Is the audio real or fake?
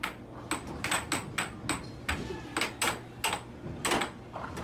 real